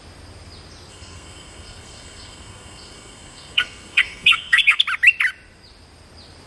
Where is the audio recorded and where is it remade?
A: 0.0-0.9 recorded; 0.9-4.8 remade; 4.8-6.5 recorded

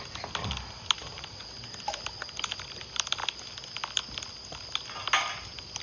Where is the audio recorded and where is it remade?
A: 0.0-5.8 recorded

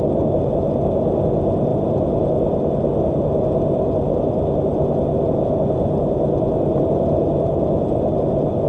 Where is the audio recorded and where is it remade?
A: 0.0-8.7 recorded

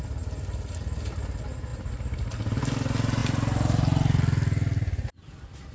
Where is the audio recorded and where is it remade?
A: 0.0-5.7 recorded

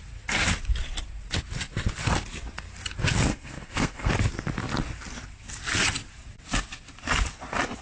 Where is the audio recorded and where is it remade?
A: 0.0-3.3 recorded; 3.3-4.1 remade; 4.1-7.8 recorded

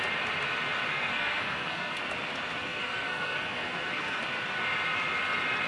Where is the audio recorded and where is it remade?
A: 0.0-0.9 recorded; 0.9-2.0 remade; 2.0-2.6 recorded; 2.6-4.2 remade; 4.2-5.7 recorded

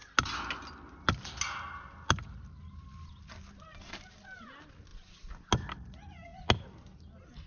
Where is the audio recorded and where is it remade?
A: 0.0-7.5 recorded

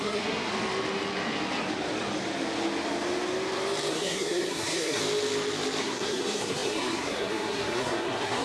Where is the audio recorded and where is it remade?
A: 0.0-0.5 remade; 0.5-3.9 recorded; 3.9-5.0 remade; 5.0-5.8 recorded; 5.8-8.4 remade